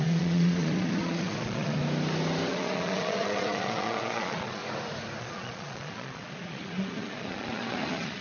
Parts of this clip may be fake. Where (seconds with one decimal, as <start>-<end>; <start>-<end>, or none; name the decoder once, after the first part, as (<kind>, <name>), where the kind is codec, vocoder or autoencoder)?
0.0-1.8 (vocoder, Vocos); 2.5-4.6; 5.2-8.2